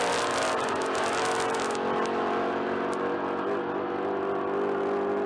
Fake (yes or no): no